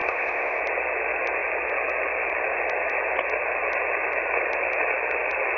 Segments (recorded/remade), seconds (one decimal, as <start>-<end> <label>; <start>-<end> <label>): 0.0-0.6 remade; 0.6-5.6 recorded